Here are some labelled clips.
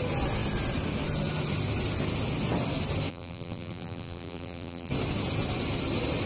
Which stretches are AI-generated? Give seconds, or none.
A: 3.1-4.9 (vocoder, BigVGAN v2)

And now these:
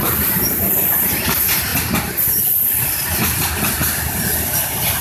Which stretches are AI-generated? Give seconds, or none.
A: 0.0-1.2 (vocoder, BigVGAN v2); 1.7-5.0

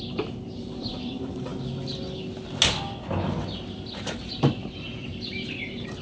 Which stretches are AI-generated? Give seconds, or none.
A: 0.0-1.5 (vocoder, BigVGAN v2); 5.1-6.0

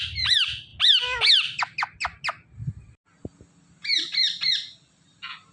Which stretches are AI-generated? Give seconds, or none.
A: none

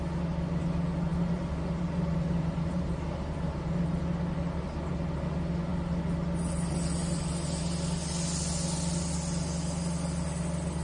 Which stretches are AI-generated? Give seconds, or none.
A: 1.1-4.0 (vocoder, BigVGAN v2)

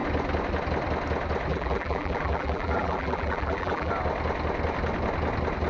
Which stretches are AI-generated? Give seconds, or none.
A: 1.5-3.9 (vocoder, BigVGAN v2)

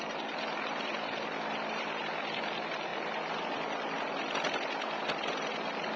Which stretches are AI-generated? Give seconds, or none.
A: none

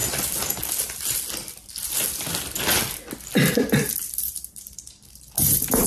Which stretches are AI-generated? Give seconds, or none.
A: 3.5-5.9 (vocoder, BigVGAN v2)